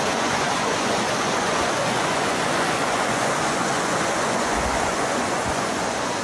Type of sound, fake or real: fake